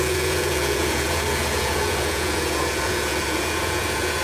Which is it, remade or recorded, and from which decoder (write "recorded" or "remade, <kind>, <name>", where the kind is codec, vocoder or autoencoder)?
remade, vocoder, Vocos